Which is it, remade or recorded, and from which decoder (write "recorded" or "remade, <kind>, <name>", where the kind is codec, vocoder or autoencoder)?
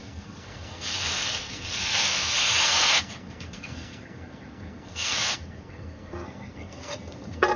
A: remade, codec, SNAC